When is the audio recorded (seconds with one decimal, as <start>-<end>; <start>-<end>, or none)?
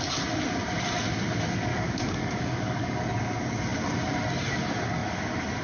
0.0-1.7; 3.0-5.6